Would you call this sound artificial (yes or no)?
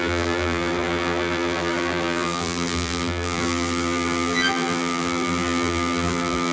yes